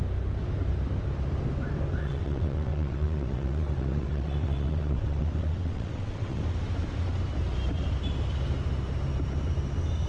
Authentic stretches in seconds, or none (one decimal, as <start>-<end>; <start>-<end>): 0.0-2.0; 6.4-10.1